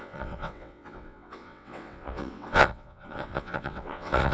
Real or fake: fake